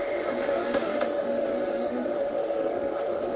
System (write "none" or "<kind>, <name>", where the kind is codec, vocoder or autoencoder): autoencoder, DAC-VAE